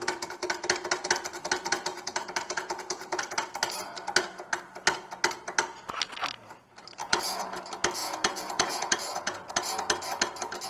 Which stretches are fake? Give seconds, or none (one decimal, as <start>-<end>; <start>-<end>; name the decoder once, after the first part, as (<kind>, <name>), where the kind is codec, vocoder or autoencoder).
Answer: 1.9-3.3 (vocoder, Vocos); 7.0-7.6; 8.0-9.5